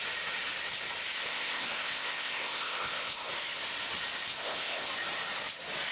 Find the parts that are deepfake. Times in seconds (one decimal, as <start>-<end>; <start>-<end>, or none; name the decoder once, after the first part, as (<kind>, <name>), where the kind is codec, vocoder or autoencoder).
1.2-3.3 (codec, ZipCodec); 4.3-4.9

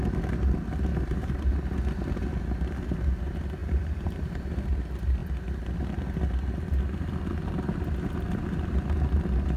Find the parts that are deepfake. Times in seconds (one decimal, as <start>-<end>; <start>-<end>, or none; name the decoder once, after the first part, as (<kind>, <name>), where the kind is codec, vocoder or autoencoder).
0.9-1.4 (vocoder, BigVGAN v2); 3.6-4.7

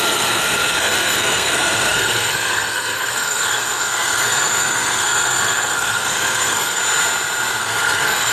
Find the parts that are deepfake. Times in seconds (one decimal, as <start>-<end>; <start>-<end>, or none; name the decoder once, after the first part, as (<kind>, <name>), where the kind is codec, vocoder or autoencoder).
0.0-6.8 (codec, SNAC); 7.6-8.3

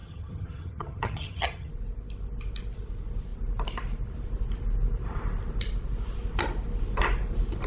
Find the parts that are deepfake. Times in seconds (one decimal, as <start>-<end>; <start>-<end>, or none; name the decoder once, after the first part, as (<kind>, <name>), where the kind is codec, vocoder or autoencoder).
0.0-1.7 (vocoder, HiFi-GAN)

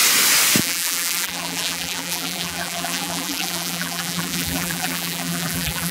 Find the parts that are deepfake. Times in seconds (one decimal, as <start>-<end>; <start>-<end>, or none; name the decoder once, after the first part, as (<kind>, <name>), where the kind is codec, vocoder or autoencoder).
0.6-5.9 (vocoder, BigVGAN v2)

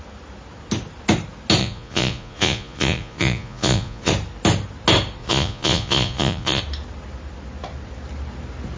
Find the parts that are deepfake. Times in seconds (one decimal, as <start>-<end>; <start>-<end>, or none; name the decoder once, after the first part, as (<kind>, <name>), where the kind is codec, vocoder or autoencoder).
1.6-4.1 (vocoder, Vocos); 5.2-6.6

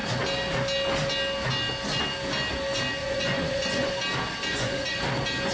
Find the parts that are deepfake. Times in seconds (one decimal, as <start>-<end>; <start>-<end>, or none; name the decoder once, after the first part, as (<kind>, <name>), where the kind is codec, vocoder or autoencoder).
3.0-3.9 (vocoder, Vocos); 4.5-5.0

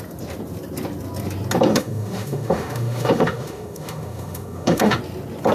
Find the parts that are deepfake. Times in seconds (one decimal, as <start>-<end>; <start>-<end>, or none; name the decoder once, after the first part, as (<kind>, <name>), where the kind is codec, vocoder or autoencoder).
1.7-5.0 (autoencoder, DAC-VAE)